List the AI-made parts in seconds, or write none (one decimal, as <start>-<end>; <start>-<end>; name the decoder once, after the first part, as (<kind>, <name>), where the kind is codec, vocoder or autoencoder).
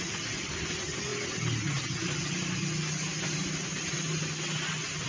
none